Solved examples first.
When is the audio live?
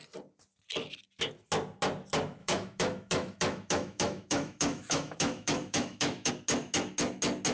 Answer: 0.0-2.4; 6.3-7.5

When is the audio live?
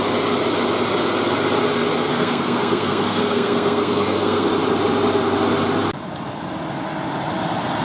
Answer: 0.0-2.1; 4.5-7.8